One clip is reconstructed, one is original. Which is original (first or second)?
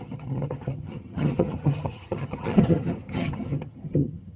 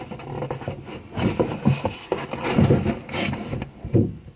second